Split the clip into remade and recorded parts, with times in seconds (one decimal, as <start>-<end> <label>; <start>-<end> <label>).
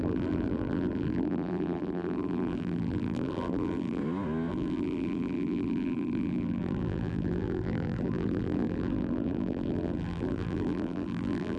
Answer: 0.0-4.0 remade; 4.0-4.5 recorded; 4.5-11.6 remade